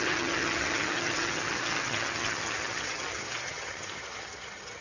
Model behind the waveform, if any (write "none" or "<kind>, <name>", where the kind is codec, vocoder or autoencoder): vocoder, HiFi-GAN